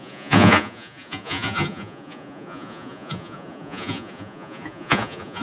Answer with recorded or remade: remade